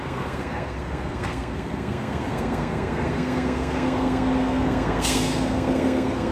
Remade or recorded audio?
remade